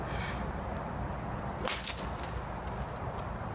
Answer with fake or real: real